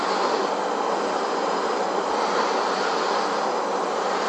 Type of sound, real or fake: real